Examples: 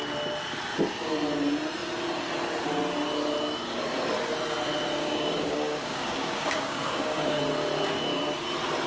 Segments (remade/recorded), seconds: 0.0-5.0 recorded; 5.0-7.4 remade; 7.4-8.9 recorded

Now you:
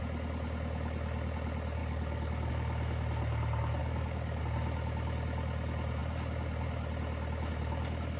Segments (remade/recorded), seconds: 0.0-1.8 recorded; 1.8-2.5 remade; 2.5-3.8 recorded; 3.8-4.4 remade; 4.4-8.2 recorded

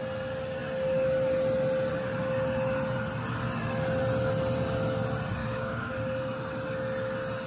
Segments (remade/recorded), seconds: 0.0-5.4 recorded; 5.4-5.9 remade; 5.9-7.5 recorded

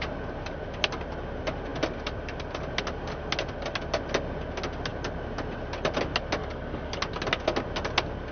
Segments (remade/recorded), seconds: 0.0-6.4 recorded; 6.4-7.0 remade; 7.0-8.3 recorded

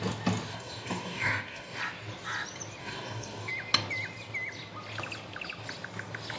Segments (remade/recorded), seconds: 0.0-0.5 recorded; 0.5-1.8 remade; 1.8-2.8 recorded; 2.8-3.5 remade; 3.5-6.4 recorded

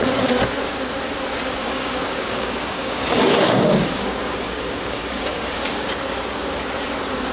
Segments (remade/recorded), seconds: 0.0-1.6 recorded; 1.6-5.9 remade; 5.9-7.3 recorded